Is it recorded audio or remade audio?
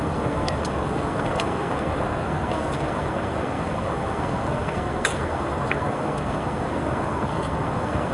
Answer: remade